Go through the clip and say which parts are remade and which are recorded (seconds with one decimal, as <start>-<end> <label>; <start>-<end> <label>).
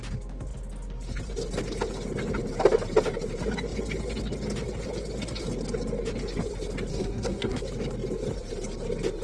0.0-6.9 recorded; 6.9-7.6 remade; 7.6-9.2 recorded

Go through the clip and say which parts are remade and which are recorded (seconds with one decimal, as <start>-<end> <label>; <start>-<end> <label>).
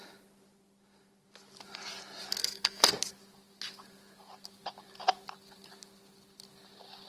0.0-2.4 recorded; 2.4-2.9 remade; 2.9-7.1 recorded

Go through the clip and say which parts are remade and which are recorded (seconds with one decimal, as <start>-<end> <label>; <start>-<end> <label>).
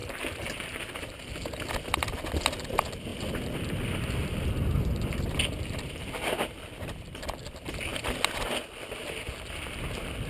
0.0-2.7 recorded; 2.7-3.1 remade; 3.1-5.0 recorded; 5.0-7.9 remade; 7.9-10.3 recorded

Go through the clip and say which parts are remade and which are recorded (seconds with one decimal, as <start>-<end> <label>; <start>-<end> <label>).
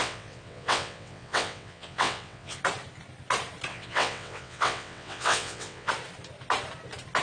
0.0-2.6 remade; 2.6-3.7 recorded; 3.7-5.9 remade; 5.9-7.2 recorded